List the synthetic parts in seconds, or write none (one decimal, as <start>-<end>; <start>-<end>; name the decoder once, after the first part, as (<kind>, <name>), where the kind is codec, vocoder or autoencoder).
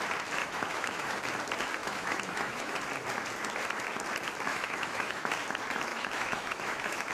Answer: 0.4-1.2 (autoencoder, DAC-VAE); 1.8-2.8; 4.5-5.3; 5.9-7.1